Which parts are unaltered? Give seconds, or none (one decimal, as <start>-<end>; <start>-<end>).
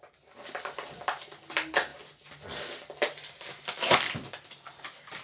0.0-5.2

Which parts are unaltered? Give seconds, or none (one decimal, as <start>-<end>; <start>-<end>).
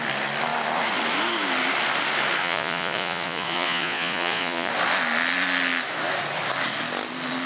0.0-2.4; 4.7-7.5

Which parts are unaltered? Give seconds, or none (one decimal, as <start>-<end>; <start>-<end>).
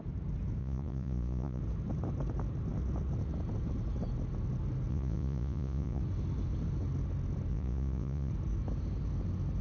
0.0-0.6; 1.6-4.9; 6.0-7.5; 8.3-9.6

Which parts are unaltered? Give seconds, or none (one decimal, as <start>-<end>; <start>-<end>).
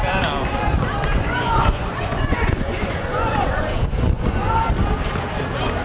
0.0-1.1; 4.6-5.8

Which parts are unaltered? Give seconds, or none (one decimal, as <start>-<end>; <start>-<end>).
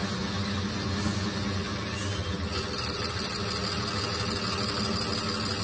0.0-5.6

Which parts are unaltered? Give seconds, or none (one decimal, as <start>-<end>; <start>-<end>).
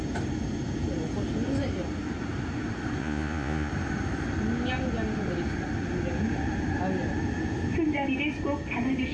0.0-3.0; 3.7-9.1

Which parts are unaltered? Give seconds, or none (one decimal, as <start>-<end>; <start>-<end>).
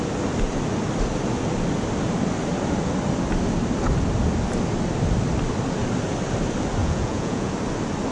0.0-6.8; 7.5-8.1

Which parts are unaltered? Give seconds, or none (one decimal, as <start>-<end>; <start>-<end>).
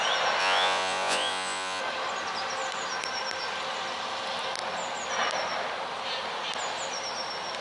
0.0-0.4; 1.8-7.6